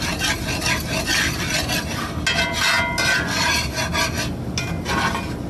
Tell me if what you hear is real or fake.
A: real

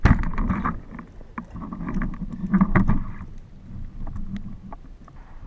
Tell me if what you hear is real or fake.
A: real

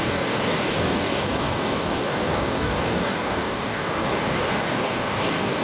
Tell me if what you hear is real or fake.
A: fake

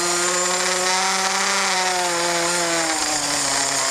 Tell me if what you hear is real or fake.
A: real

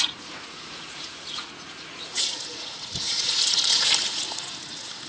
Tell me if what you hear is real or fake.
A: fake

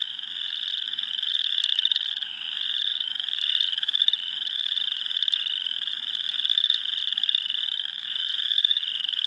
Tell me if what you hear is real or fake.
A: fake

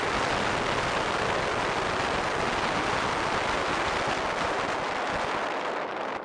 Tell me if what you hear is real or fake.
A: real